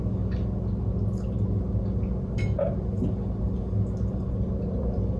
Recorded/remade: recorded